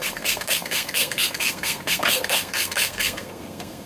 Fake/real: fake